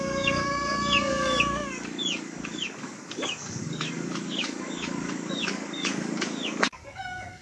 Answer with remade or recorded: remade